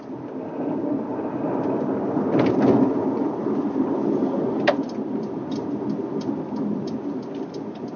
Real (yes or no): yes